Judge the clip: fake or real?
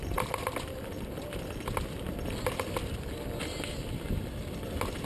real